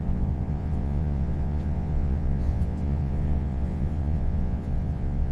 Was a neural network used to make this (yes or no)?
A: yes